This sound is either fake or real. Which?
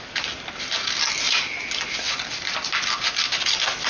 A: real